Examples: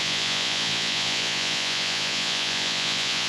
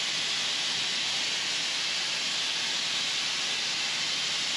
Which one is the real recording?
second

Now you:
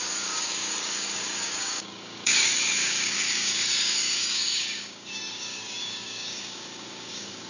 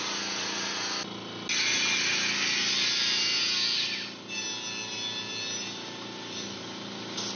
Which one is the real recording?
second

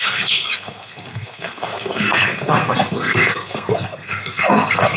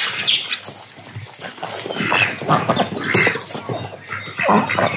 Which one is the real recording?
second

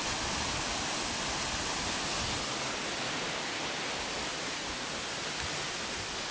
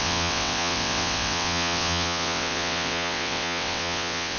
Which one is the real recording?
first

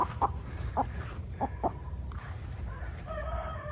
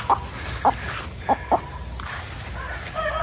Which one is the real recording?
second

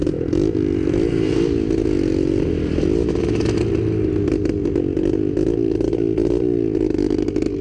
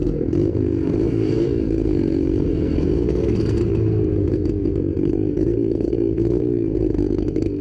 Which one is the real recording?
first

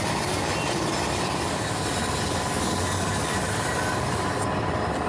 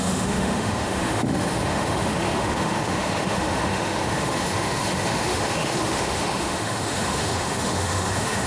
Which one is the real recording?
first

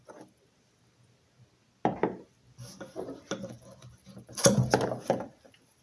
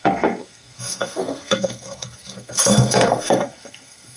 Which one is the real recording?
first